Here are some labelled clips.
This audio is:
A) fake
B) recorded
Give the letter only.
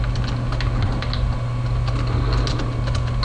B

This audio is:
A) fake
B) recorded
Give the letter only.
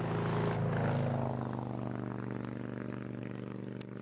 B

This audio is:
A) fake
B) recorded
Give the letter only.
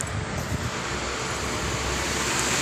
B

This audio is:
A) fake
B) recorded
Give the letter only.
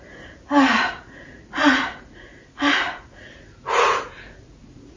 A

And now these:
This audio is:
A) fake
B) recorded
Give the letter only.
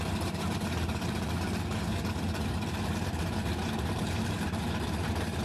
A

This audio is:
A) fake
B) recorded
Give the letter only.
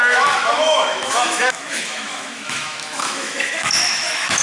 A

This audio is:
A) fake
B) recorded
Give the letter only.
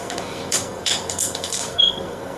A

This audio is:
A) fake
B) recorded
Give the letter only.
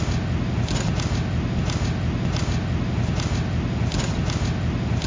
B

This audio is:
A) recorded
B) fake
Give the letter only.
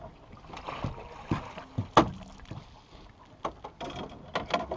A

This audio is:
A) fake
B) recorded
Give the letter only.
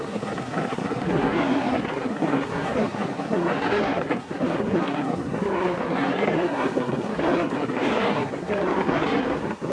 A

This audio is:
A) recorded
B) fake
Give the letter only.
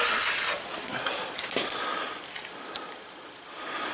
A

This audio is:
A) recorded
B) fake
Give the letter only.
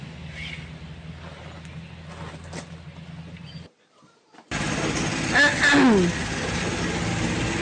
A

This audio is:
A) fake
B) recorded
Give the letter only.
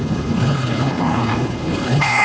A